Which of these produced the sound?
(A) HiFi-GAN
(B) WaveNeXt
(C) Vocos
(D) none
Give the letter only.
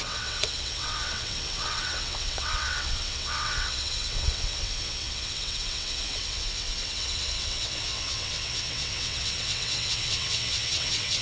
B